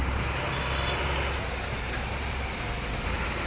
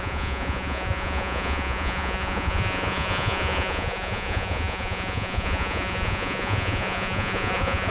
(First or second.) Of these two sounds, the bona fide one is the first